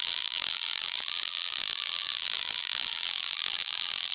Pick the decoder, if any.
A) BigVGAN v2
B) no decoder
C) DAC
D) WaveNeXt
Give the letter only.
A